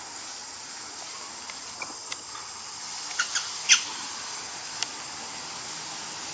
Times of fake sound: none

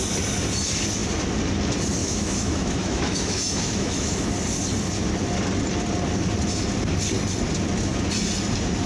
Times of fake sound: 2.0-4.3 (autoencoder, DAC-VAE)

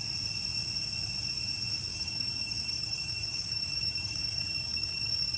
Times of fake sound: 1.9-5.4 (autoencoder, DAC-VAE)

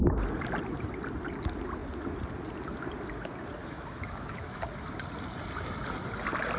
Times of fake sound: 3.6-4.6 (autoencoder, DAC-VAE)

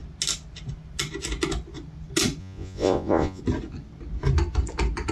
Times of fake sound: 2.4-3.4 (vocoder, Vocos)